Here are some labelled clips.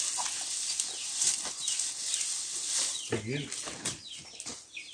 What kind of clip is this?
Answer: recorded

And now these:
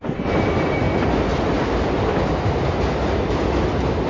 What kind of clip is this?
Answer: recorded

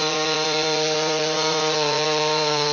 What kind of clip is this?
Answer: remade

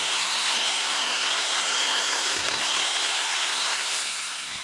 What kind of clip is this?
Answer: remade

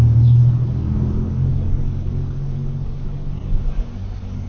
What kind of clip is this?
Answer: remade